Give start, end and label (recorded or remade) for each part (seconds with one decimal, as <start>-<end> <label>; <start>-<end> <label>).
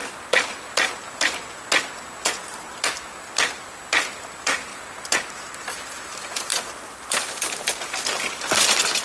0.0-0.9 remade; 0.9-2.5 recorded; 2.5-3.8 remade; 3.8-4.7 recorded; 4.7-5.3 remade; 5.3-6.5 recorded; 6.5-7.6 remade; 7.6-9.0 recorded